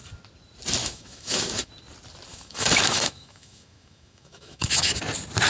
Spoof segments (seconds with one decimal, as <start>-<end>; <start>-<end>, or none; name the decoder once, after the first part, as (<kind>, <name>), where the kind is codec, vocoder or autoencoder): 0.8-1.7 (autoencoder, DAC-VAE); 2.3-5.0